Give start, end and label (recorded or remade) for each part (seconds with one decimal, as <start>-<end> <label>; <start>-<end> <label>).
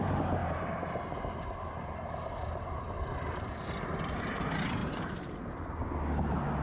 0.0-0.4 recorded; 0.4-4.2 remade; 4.2-4.8 recorded; 4.8-5.8 remade; 5.8-6.6 recorded